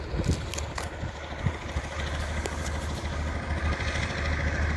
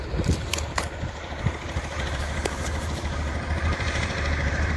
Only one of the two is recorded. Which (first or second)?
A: first